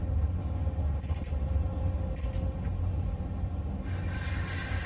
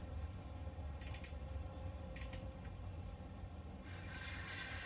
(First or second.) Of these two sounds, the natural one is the first